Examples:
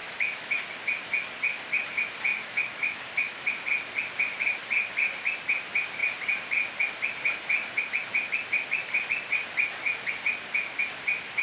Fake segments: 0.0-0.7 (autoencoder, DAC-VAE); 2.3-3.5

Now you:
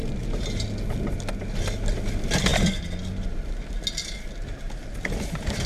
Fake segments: none

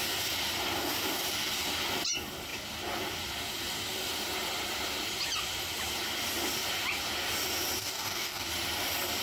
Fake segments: 7.8-8.5 (codec, DAC)

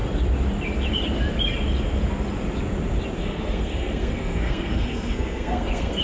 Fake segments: 3.2-6.0 (codec, SNAC)